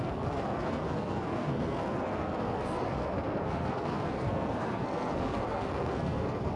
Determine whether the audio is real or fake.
fake